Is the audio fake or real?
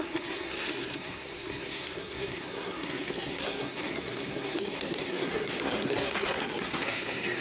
fake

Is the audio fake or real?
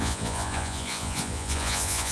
fake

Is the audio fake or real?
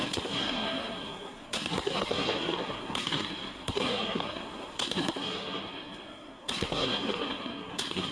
fake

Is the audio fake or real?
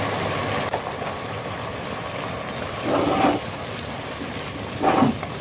real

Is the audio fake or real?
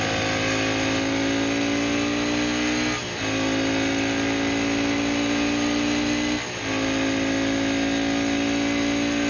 real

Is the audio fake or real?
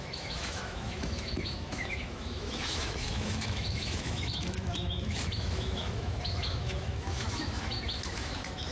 fake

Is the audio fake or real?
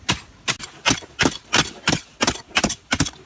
real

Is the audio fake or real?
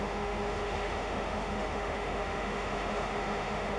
fake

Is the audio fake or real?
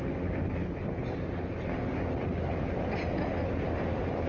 real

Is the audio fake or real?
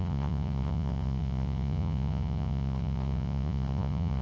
fake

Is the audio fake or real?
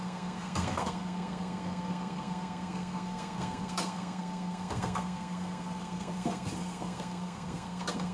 fake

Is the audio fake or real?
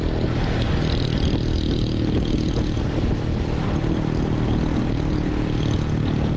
real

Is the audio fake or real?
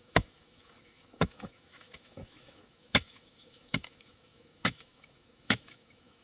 fake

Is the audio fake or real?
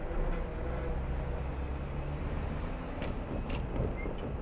real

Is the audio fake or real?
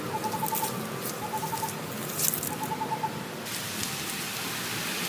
real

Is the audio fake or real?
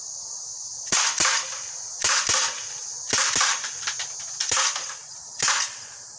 real